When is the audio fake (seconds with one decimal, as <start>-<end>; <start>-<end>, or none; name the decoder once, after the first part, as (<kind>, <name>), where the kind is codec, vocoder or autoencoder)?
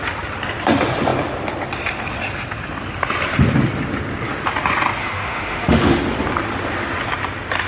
5.0-6.0 (autoencoder, DAC-VAE)